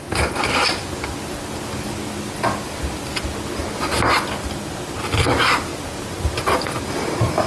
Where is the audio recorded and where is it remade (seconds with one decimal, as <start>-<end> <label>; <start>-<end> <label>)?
0.0-0.8 remade; 0.8-5.2 recorded; 5.2-5.7 remade; 5.7-6.8 recorded; 6.8-7.5 remade